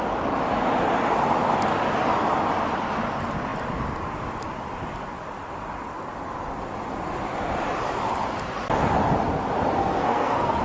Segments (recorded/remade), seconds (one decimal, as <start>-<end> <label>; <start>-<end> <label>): 0.0-9.8 recorded; 9.8-10.6 remade